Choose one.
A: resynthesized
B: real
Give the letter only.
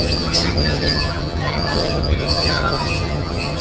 A